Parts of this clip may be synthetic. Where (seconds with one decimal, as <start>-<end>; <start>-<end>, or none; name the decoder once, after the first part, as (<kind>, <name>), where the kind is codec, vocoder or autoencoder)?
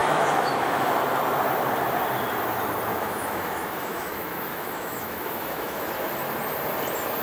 0.0-0.9 (autoencoder, DAC-VAE); 2.9-5.9